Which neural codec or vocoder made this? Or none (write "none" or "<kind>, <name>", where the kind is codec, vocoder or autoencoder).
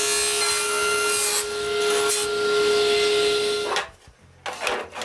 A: none